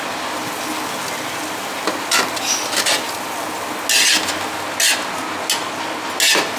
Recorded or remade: recorded